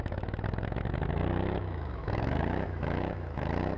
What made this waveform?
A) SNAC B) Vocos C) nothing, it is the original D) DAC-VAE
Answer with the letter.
D